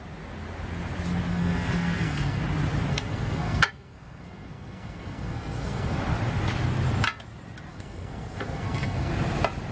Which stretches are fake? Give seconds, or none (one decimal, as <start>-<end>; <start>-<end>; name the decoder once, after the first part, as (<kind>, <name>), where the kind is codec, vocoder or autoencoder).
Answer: 1.3-2.4 (codec, SNAC); 2.9-6.0; 7.7-9.1